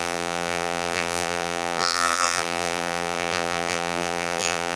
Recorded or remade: remade